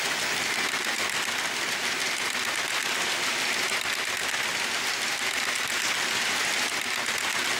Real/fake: real